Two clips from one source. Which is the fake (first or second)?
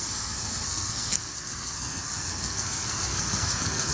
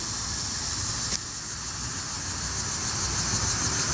first